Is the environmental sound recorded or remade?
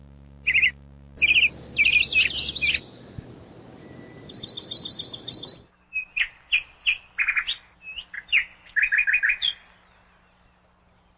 recorded